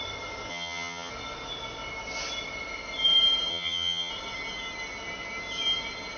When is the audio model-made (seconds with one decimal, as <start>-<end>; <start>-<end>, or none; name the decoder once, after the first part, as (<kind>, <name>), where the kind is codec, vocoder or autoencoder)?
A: 0.5-1.1 (vocoder, HiFi-GAN); 3.5-4.1